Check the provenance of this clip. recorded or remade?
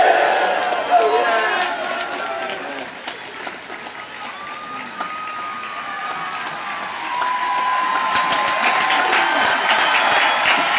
recorded